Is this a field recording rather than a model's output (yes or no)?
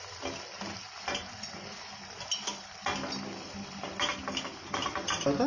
yes